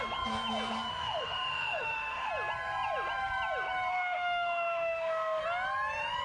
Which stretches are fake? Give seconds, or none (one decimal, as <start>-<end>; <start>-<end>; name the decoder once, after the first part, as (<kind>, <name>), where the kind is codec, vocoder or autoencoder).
0.9-2.3 (autoencoder, DAC-VAE); 3.9-5.4